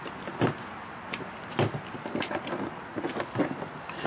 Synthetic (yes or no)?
no